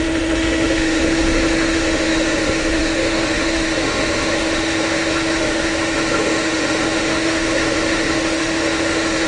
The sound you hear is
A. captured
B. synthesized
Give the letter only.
B